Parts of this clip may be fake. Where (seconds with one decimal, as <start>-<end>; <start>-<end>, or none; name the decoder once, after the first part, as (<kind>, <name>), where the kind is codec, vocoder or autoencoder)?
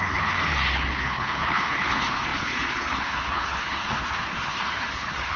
0.0-5.4 (codec, HILCodec)